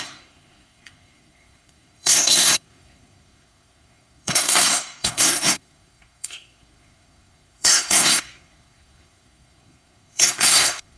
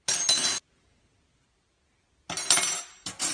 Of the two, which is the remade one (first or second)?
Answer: first